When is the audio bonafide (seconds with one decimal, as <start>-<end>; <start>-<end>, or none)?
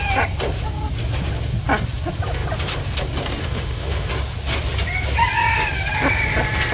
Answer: 0.0-3.4; 4.1-6.7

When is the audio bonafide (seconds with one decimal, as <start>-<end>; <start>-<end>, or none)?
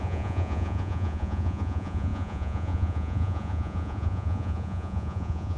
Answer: none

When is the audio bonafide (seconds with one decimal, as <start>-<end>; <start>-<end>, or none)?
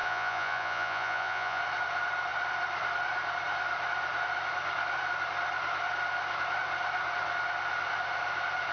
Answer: 1.6-8.7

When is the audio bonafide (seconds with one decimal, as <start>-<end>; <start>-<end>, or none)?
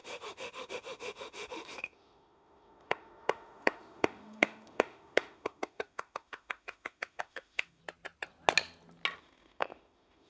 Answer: 7.8-9.2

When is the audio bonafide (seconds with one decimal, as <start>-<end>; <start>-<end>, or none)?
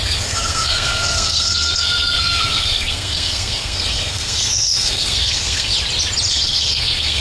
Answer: 5.7-6.3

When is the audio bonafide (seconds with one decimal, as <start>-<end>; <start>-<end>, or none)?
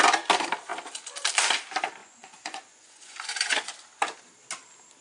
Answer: 0.0-2.0; 3.7-5.0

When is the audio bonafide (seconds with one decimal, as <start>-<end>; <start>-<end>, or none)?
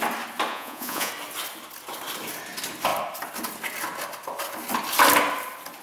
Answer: 0.0-0.5; 1.1-5.8